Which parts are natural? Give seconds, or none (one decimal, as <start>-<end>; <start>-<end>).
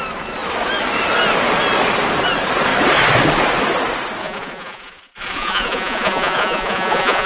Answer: 0.0-4.2